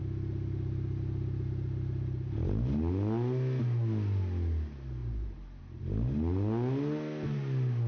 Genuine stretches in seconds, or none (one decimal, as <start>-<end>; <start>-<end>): 0.0-5.0; 5.8-7.9